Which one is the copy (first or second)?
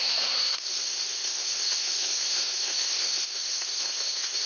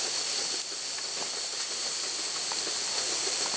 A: first